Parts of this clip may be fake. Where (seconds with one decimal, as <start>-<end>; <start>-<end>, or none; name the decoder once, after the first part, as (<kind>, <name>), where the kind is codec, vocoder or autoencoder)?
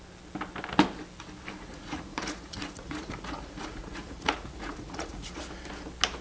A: 1.7-5.4 (vocoder, Vocos)